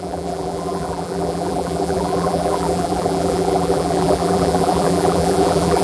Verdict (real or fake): fake